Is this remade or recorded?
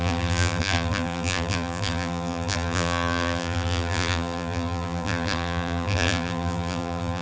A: remade